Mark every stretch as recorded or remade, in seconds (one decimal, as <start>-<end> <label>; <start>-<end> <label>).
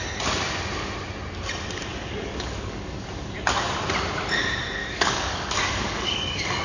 0.0-1.9 recorded; 1.9-3.3 remade; 3.3-4.8 recorded; 4.8-6.6 remade